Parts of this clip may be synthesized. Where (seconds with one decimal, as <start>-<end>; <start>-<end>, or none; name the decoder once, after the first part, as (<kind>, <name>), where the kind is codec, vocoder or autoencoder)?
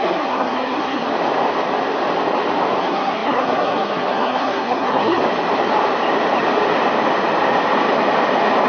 0.0-1.1 (codec, SNAC); 2.8-5.2